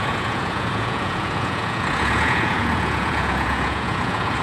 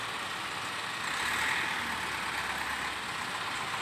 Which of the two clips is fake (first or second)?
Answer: first